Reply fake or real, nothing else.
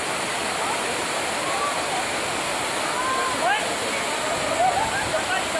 real